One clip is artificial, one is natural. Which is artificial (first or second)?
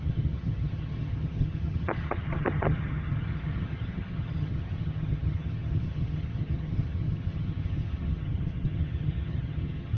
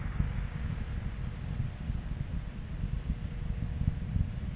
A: first